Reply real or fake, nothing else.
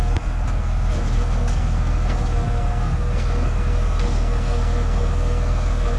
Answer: fake